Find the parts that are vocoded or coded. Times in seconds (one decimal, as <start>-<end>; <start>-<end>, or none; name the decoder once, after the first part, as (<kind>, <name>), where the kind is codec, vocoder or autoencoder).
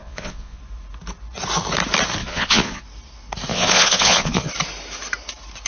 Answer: 0.0-0.6 (vocoder, Vocos); 2.2-2.8; 3.5-4.5